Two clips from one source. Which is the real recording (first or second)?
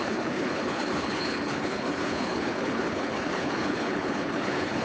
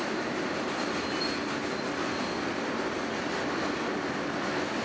second